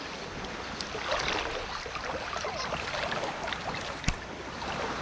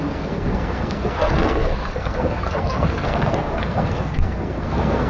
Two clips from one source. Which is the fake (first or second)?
second